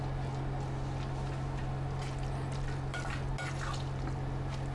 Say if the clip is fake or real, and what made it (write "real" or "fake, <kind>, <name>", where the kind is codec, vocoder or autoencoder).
real